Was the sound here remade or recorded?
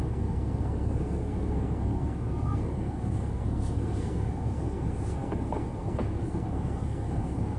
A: remade